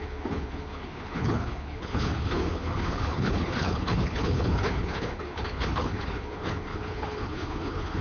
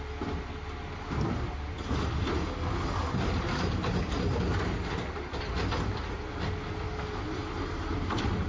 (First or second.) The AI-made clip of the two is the first